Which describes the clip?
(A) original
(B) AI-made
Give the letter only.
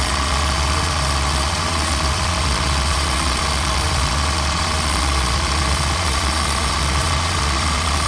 B